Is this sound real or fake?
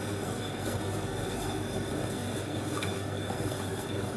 fake